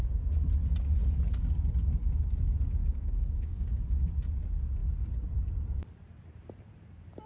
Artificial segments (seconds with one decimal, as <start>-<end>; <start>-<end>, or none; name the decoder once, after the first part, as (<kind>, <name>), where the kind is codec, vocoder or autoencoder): 2.8-3.8 (codec, DAC)